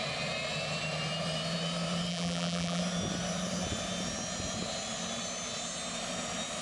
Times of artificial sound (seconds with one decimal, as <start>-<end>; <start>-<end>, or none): 2.1-2.8